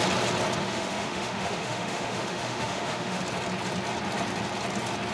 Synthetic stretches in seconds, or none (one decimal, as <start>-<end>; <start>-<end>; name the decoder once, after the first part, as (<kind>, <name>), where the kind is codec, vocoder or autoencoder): 0.6-3.2 (autoencoder, DAC-VAE)